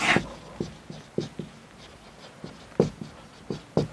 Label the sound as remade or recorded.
recorded